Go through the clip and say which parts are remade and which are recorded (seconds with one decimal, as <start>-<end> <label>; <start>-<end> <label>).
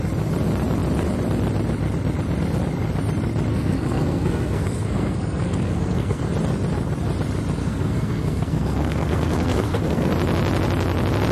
0.0-3.5 recorded; 3.5-6.2 remade; 6.2-7.6 recorded; 7.6-10.1 remade; 10.1-11.3 recorded